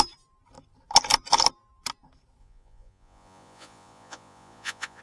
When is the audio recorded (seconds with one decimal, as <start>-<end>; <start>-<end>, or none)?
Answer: 0.0-2.4